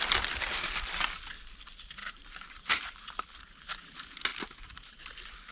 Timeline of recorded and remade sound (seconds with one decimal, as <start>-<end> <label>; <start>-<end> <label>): 0.0-2.0 recorded; 2.0-3.0 remade; 3.0-5.5 recorded